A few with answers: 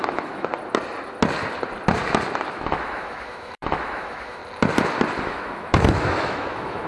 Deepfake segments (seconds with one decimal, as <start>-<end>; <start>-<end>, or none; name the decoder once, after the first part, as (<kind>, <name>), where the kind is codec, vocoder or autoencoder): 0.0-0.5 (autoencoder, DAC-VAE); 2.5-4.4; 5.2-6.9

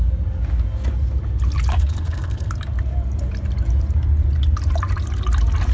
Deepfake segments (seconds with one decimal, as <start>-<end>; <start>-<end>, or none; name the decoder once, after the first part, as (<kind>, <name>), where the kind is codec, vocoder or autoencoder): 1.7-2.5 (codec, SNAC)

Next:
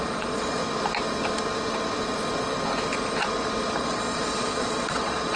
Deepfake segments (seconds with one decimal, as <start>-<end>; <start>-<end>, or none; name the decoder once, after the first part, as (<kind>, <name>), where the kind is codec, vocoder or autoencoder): 0.0-0.6 (vocoder, Vocos); 3.8-5.4

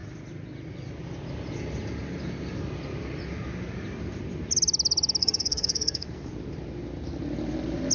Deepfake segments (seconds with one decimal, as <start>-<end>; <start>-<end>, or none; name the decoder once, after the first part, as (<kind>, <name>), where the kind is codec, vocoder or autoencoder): 5.2-6.3 (codec, SNAC)